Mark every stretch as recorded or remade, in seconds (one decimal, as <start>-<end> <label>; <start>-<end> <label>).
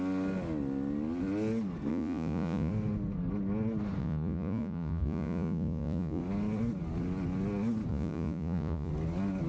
0.0-1.9 recorded; 1.9-2.7 remade; 2.7-4.0 recorded; 4.0-6.2 remade; 6.2-7.9 recorded; 7.9-8.9 remade; 8.9-9.5 recorded